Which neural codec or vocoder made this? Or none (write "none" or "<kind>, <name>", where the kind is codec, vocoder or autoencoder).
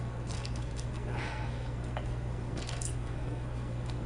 codec, SNAC